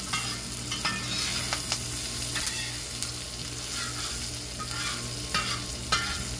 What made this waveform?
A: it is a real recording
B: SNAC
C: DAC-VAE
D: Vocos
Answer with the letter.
A